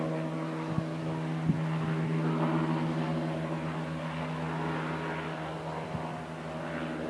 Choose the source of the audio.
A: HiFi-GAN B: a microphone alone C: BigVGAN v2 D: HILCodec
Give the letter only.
B